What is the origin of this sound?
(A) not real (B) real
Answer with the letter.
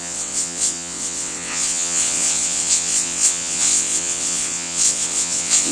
A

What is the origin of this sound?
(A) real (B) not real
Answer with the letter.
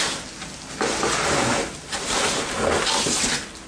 A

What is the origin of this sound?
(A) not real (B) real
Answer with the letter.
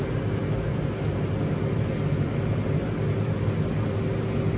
B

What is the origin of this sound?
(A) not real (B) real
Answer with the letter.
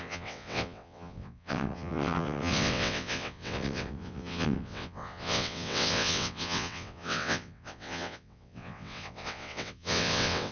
A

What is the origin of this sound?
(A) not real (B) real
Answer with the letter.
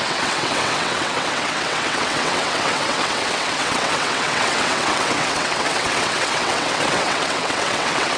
A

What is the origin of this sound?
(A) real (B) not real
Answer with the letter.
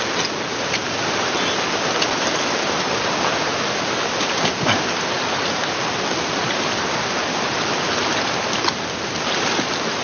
A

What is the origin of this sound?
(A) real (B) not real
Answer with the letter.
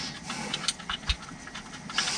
A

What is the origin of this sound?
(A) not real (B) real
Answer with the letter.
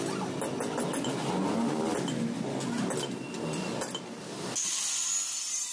B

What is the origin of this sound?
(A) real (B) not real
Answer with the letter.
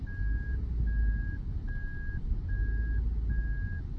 A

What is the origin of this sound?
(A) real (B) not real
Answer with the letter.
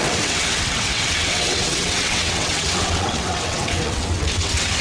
B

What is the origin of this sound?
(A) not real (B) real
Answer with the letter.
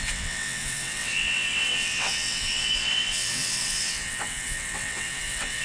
A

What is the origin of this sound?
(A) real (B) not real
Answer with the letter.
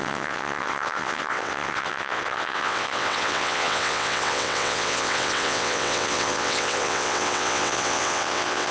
B